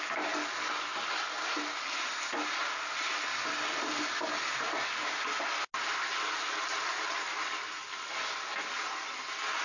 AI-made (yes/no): no